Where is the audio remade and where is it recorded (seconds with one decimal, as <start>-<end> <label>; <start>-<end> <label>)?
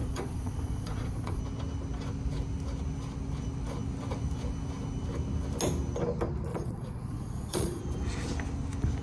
0.0-1.4 remade; 1.4-6.5 recorded; 6.5-7.8 remade; 7.8-9.0 recorded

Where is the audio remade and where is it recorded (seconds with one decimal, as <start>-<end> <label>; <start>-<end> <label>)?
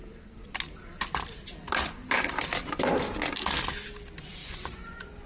0.0-4.4 recorded; 4.4-5.3 remade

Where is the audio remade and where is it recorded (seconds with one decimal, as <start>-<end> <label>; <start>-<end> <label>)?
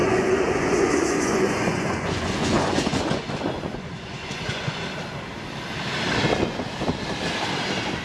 0.0-4.8 remade; 4.8-8.0 recorded